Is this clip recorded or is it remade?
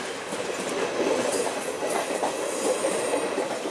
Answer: recorded